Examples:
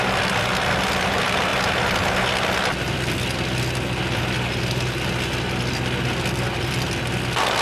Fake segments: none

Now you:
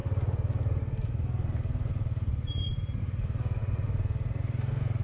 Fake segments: none

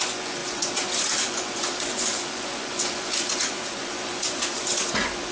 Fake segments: 0.0-5.3 (vocoder, Vocos)